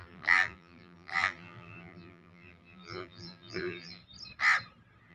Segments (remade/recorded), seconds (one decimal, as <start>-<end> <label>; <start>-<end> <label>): 0.0-4.0 remade; 4.0-5.1 recorded